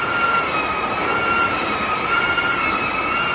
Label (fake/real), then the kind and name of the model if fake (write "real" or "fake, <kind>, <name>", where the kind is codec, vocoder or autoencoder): real